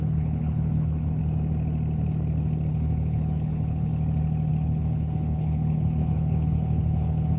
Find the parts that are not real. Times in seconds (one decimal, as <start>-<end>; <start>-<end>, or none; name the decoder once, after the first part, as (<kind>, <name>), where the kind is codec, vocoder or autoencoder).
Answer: 0.0-1.2 (codec, HILCodec); 2.7-3.9; 4.5-7.4